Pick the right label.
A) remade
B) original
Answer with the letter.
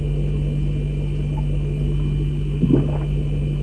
B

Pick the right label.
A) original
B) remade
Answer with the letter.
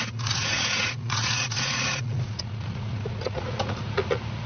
B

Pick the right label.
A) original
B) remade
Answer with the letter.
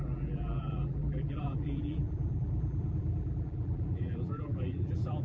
B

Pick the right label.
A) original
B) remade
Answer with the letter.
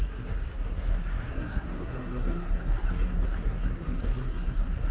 B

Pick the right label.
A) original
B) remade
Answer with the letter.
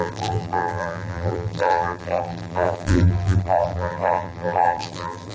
B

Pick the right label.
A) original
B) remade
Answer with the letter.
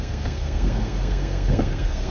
B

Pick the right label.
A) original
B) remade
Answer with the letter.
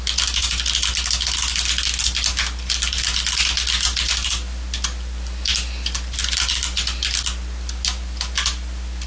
A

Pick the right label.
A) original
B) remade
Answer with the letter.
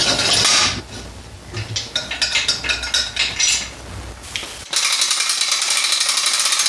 A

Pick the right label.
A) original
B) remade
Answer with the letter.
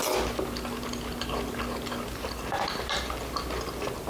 A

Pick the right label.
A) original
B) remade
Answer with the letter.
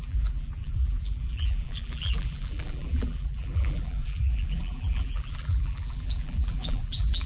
B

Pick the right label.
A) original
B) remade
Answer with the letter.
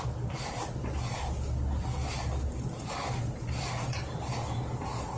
A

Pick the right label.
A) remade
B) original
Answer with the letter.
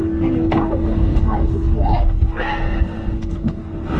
A